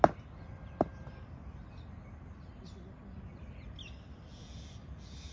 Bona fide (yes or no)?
yes